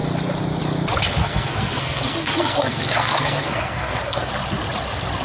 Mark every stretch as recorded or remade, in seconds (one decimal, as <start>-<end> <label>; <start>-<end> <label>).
0.0-1.2 recorded; 1.2-4.3 remade; 4.3-5.2 recorded